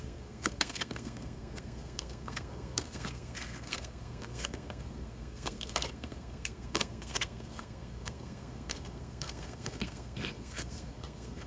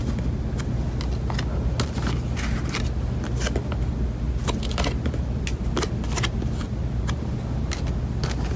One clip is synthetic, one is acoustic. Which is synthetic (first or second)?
first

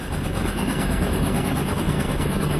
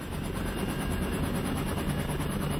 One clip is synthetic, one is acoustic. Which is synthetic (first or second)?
first